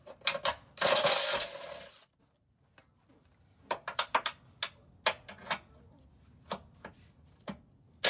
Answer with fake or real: real